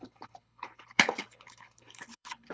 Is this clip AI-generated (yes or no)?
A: yes